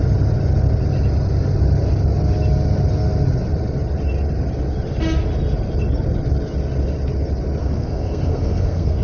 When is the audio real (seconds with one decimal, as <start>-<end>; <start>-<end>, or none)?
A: 0.0-7.6